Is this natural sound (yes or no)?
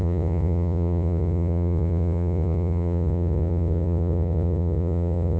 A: no